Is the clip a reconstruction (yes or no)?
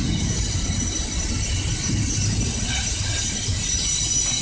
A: no